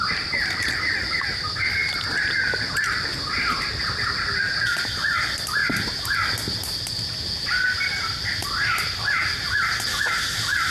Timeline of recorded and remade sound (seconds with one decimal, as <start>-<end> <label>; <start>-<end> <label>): 0.0-10.7 recorded